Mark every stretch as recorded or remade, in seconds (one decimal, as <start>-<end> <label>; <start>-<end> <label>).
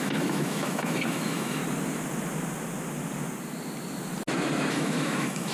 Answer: 0.0-1.6 remade; 1.6-4.7 recorded; 4.7-5.5 remade